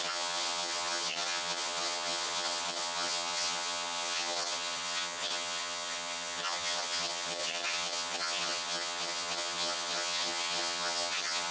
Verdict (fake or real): fake